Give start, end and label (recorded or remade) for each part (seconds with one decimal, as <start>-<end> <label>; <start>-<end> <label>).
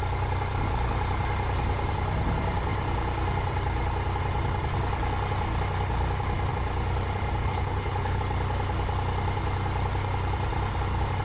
0.0-7.4 recorded; 7.4-8.2 remade; 8.2-11.2 recorded